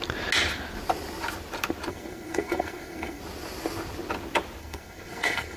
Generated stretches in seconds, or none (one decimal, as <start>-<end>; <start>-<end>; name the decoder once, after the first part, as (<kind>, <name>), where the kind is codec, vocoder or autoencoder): 1.9-3.2 (codec, SNAC); 4.6-5.6